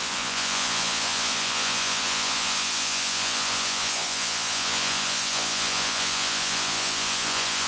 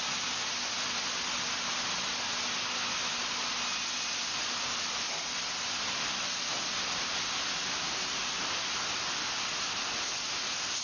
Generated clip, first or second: first